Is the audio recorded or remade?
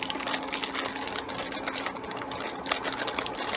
recorded